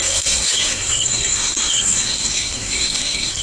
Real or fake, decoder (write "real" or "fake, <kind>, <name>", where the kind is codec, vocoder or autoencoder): fake, codec, SNAC